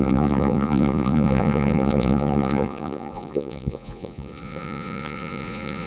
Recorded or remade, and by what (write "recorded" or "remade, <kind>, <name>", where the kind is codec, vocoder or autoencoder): remade, vocoder, Vocos